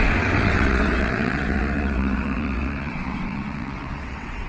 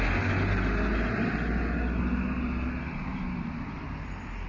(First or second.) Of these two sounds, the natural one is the second